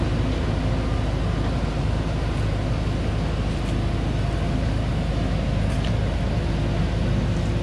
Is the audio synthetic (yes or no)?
no